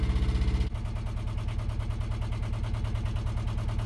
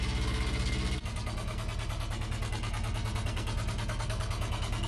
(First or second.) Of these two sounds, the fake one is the second